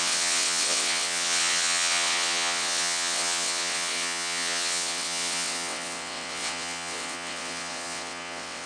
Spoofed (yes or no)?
yes